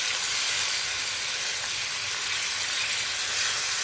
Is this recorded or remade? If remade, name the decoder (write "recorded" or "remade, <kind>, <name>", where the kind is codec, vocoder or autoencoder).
recorded